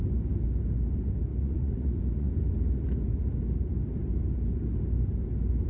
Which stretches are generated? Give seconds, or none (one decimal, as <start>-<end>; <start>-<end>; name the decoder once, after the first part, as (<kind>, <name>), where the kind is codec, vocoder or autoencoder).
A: 1.3-2.3 (vocoder, Vocos)